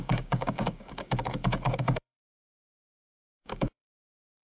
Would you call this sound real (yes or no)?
no